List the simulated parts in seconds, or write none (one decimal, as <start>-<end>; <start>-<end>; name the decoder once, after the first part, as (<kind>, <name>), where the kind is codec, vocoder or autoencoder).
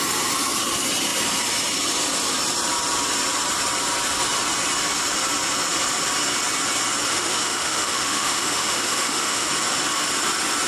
7.1-9.5 (autoencoder, DAC-VAE)